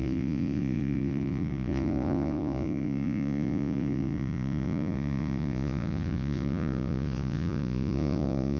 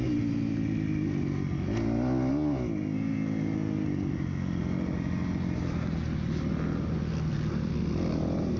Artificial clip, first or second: first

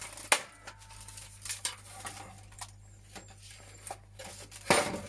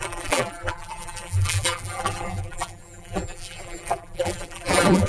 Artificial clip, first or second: second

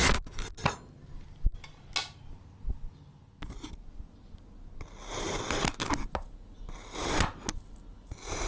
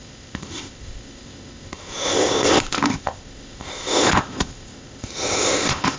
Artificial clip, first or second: second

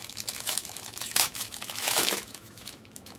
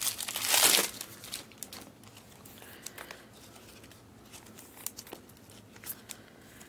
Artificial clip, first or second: first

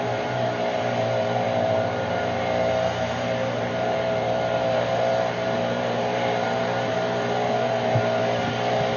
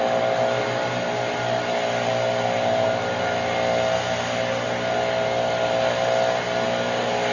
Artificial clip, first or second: first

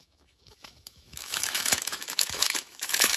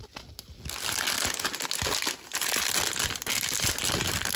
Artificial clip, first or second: first